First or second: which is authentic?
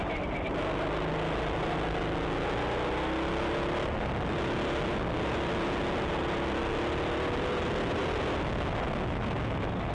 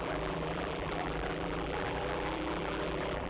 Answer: first